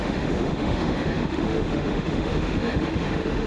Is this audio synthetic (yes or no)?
yes